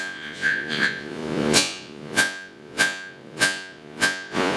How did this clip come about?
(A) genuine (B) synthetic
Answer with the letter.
B